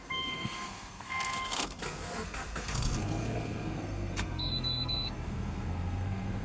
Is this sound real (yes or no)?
no